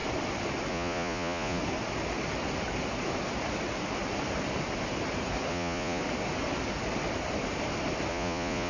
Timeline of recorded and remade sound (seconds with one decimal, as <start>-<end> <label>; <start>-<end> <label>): 0.0-0.7 recorded; 0.7-1.6 remade; 1.6-5.5 recorded; 5.5-6.0 remade; 6.0-8.1 recorded; 8.1-8.7 remade